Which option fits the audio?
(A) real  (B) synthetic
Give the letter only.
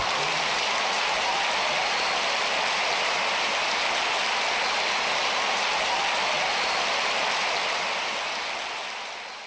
A